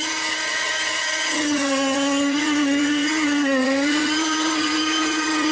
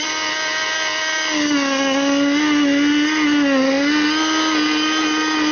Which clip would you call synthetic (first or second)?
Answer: first